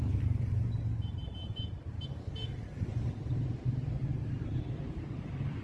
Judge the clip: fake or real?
real